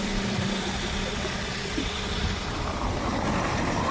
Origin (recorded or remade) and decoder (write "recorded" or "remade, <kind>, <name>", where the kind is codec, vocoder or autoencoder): remade, vocoder, BigVGAN v2